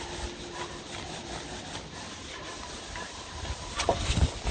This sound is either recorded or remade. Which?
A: recorded